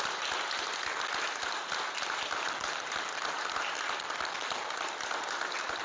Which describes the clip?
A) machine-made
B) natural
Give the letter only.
B